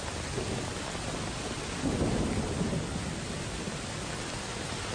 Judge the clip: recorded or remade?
recorded